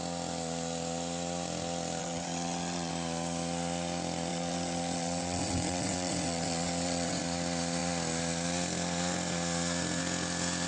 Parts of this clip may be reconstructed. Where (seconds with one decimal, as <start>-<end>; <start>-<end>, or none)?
2.0-2.9; 4.3-7.2